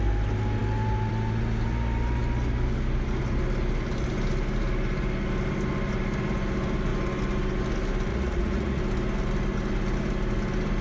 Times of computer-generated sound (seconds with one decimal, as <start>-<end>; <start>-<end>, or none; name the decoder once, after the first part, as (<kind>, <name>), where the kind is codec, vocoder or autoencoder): 8.1-8.8 (vocoder, Vocos)